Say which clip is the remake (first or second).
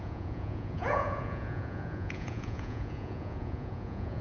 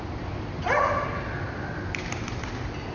first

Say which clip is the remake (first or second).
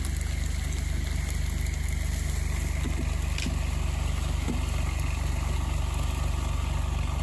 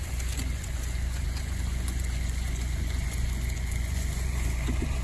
second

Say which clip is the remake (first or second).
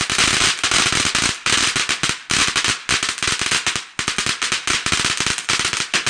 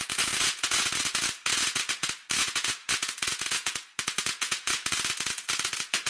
second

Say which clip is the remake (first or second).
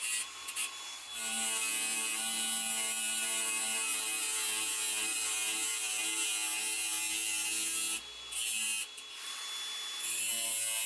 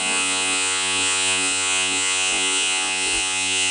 second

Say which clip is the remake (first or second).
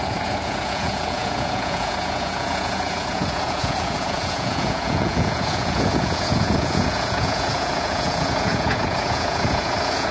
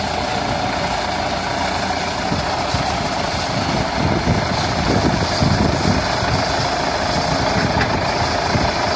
first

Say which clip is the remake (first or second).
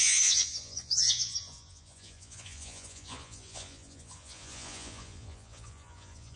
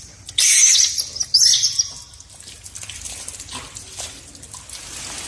first